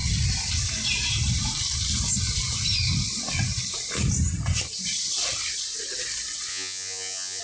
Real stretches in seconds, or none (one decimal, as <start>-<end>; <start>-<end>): 0.0-6.5

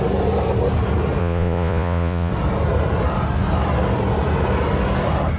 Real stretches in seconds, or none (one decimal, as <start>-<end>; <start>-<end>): 0.0-1.2; 2.3-5.4

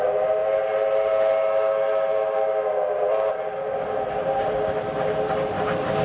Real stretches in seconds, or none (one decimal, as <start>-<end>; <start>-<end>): 0.0-6.0